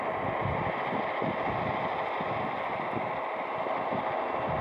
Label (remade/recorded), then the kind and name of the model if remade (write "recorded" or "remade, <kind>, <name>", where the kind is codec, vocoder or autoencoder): recorded